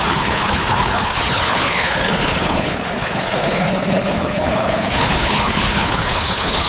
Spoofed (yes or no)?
yes